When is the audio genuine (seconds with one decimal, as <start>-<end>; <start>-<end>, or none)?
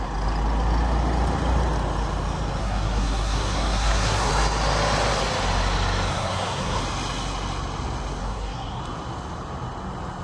0.0-2.6; 4.3-6.1; 6.8-8.2; 8.8-10.2